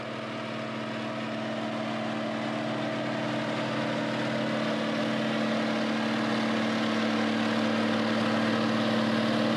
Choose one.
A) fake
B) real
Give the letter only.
B